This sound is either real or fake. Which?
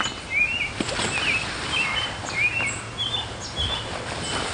real